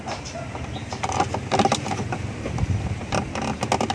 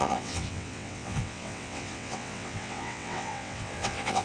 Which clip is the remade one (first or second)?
second